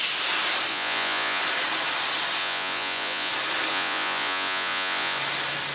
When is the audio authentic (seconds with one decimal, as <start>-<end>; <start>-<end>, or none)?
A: 0.0-0.7; 1.4-2.4; 3.3-3.7; 5.2-5.7